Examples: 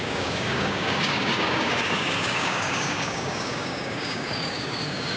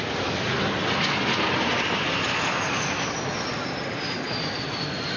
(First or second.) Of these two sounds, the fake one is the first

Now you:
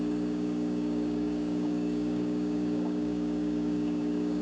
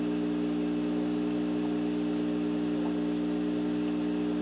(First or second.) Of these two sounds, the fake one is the first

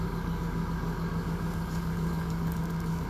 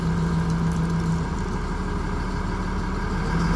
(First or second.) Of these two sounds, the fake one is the first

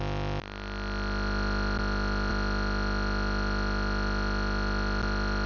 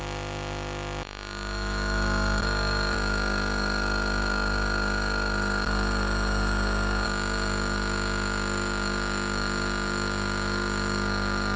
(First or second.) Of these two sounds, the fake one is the second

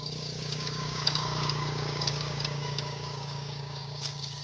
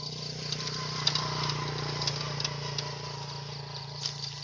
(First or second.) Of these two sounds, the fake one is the first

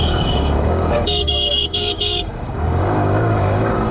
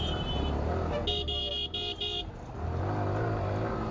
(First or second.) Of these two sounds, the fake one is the first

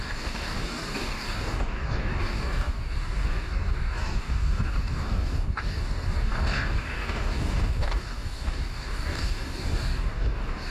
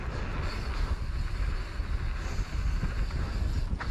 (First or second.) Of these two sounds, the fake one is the first